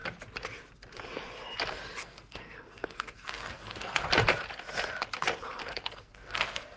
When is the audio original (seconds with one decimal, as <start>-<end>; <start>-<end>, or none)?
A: 0.0-2.0; 4.1-5.6